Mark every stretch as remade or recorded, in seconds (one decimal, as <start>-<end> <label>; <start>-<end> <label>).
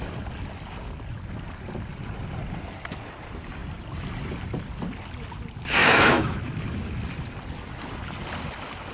0.0-5.8 recorded; 5.8-6.4 remade; 6.4-8.9 recorded